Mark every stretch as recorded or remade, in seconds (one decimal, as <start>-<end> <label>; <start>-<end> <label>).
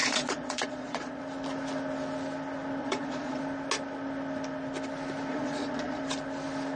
0.0-1.2 remade; 1.2-2.8 recorded; 2.8-3.4 remade; 3.4-5.3 recorded; 5.3-6.0 remade; 6.0-6.8 recorded